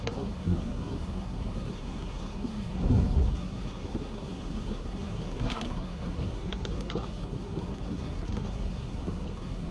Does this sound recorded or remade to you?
remade